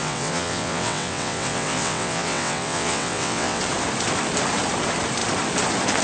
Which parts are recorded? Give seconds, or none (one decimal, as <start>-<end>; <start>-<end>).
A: 3.6-6.0